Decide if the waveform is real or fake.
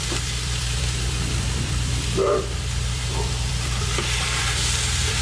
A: fake